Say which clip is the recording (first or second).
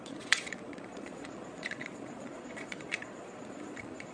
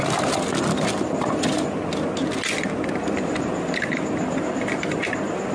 second